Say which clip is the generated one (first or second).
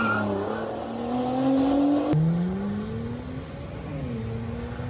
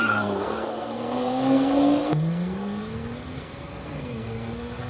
second